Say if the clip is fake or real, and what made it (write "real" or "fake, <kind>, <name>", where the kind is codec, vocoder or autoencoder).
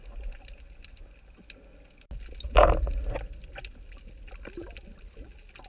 real